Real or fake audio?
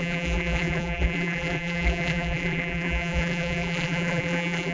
fake